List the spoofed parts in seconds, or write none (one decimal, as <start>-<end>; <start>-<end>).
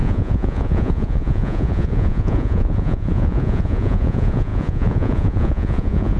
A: 0.0-6.2